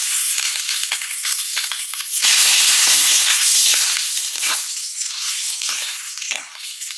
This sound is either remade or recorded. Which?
remade